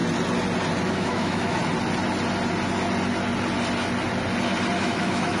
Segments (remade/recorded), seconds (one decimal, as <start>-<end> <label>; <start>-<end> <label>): 0.0-0.9 recorded; 0.9-1.6 remade; 1.6-4.8 recorded; 4.8-5.4 remade